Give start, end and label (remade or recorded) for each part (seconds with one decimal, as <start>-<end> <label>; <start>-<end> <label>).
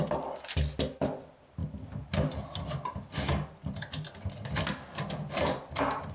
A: 0.0-6.1 recorded